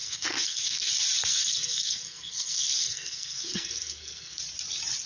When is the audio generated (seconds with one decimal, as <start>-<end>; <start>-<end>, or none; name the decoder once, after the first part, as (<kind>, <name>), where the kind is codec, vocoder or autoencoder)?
0.0-0.9 (codec, SNAC); 1.3-4.4